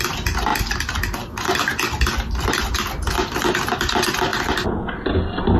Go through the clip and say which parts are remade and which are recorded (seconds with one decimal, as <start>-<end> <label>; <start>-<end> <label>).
0.0-5.6 recorded